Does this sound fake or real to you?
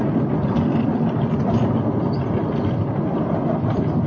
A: real